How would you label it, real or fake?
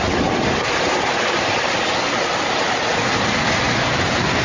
real